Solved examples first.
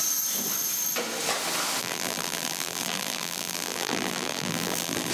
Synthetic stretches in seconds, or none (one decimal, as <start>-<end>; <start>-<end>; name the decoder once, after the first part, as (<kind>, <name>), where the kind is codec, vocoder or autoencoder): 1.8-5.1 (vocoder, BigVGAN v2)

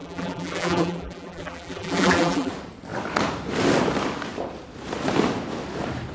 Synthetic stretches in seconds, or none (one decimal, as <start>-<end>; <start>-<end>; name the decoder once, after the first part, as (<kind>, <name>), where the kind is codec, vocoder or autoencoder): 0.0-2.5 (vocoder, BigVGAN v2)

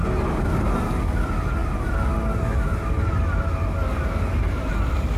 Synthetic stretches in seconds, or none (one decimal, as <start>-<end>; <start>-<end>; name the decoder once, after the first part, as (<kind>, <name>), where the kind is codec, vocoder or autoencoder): none

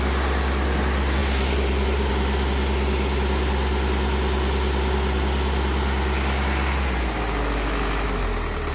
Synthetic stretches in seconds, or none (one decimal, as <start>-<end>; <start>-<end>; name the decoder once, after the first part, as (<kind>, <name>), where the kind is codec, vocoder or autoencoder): 1.2-2.1 (vocoder, BigVGAN v2)